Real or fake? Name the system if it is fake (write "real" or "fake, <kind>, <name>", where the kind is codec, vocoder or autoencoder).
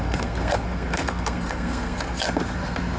fake, codec, SNAC